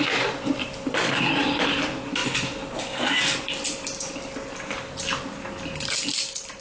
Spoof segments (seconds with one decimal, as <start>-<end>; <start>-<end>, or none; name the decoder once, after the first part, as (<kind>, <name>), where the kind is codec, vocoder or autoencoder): none